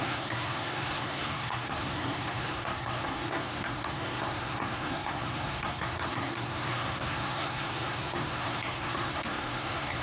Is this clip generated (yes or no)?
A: yes